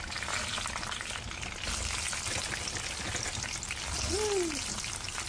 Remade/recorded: recorded